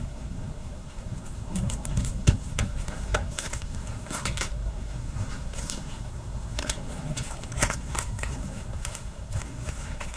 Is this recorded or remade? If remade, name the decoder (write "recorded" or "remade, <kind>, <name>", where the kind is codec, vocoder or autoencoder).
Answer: remade, codec, SNAC